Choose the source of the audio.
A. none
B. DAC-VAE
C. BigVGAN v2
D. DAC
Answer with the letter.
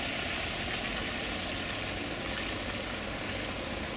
A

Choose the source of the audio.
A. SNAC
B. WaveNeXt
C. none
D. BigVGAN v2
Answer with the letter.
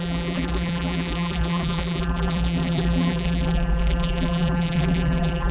D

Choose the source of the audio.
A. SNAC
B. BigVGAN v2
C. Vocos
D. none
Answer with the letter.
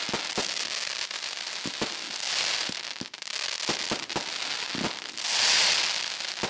D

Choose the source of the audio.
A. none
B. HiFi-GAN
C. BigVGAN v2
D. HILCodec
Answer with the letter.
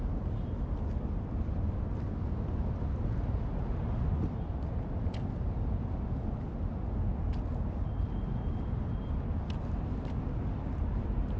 A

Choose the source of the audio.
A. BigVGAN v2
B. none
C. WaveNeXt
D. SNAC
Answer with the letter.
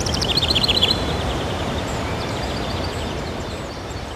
A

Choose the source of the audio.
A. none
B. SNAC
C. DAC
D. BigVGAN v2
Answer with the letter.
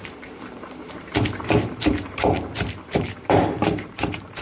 D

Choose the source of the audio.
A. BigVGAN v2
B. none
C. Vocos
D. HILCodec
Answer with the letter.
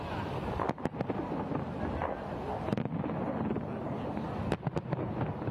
B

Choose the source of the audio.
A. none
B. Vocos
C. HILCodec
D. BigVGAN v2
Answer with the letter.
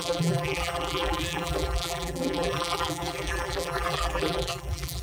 D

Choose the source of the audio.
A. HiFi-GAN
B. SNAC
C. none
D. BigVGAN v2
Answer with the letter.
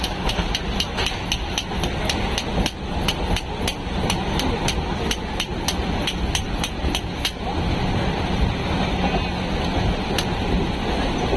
C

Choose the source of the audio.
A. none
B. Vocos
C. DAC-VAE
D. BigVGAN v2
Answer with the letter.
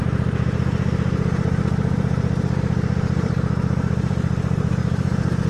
D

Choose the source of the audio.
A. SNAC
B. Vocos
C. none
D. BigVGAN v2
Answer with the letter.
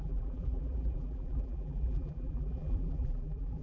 D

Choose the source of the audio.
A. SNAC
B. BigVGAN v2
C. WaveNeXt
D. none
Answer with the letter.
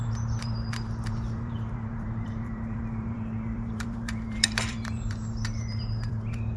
B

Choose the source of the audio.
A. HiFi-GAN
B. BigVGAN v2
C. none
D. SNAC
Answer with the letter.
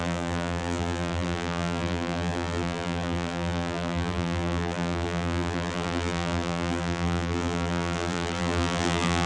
B